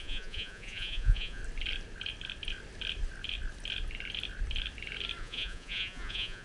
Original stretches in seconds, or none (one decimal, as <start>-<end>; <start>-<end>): 1.4-5.2